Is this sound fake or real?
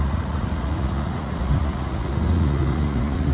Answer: fake